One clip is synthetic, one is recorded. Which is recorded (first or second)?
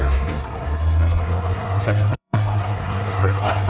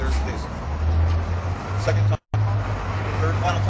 second